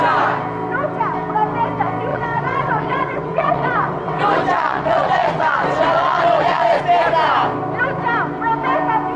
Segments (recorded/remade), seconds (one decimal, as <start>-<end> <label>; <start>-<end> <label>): 0.0-2.1 recorded; 2.1-6.8 remade; 6.8-9.2 recorded